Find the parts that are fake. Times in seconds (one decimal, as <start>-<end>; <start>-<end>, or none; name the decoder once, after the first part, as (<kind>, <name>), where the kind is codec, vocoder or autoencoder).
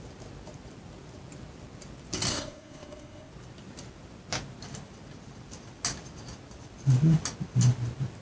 2.3-3.3 (codec, SNAC)